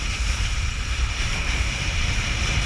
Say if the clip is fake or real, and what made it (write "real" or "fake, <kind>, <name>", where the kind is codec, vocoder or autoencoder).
fake, vocoder, BigVGAN v2